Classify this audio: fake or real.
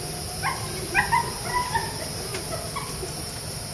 real